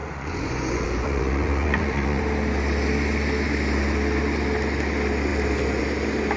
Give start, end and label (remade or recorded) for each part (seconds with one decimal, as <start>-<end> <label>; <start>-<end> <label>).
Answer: 0.0-2.2 remade; 2.2-6.4 recorded